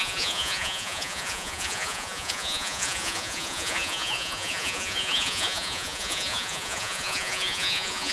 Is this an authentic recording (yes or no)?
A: no